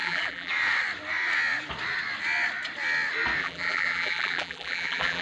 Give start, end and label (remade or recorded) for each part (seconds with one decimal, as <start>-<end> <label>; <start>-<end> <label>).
0.0-0.5 remade; 0.5-3.4 recorded; 3.4-5.2 remade